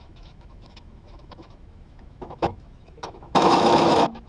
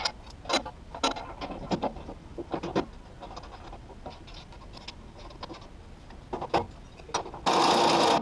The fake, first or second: first